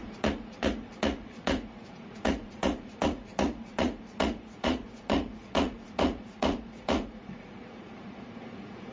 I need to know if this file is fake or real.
fake